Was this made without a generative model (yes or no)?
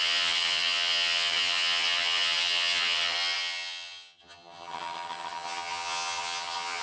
no